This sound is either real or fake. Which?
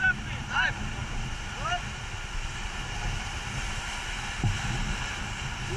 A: real